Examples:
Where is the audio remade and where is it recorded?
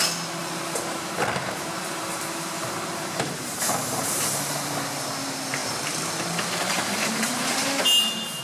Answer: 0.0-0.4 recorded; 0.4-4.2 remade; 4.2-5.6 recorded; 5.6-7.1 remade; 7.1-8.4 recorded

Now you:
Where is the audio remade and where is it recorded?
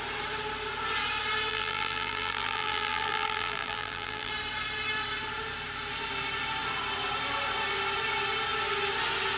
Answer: 0.0-1.5 recorded; 1.5-4.3 remade; 4.3-9.4 recorded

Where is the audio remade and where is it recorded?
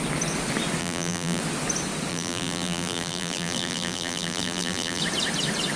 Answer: 0.0-0.8 recorded; 0.8-1.4 remade; 1.4-2.1 recorded; 2.1-5.0 remade; 5.0-5.8 recorded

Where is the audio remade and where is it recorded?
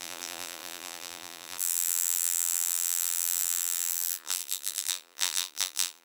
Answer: 0.0-6.0 remade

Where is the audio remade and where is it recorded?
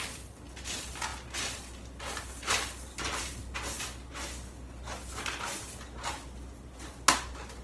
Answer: 0.0-7.6 recorded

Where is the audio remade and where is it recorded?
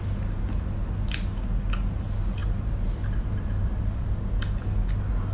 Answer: 0.0-2.4 recorded; 2.4-3.3 remade; 3.3-5.3 recorded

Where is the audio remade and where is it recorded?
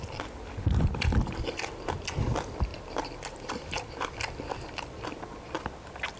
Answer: 0.0-6.2 recorded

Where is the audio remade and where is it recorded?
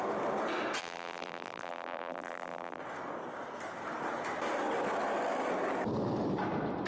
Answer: 0.0-0.8 recorded; 0.8-2.8 remade; 2.8-6.9 recorded